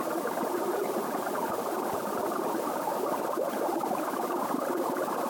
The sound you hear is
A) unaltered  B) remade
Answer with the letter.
B